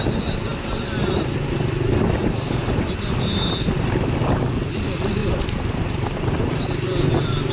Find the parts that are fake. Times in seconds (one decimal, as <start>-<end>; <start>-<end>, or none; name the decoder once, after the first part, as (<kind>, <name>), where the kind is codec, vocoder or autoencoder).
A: 2.2-2.7 (vocoder, BigVGAN v2); 5.2-6.7